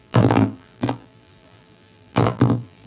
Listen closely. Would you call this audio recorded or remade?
remade